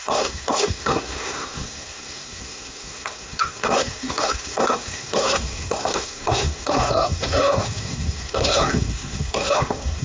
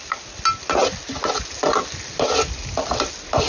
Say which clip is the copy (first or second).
first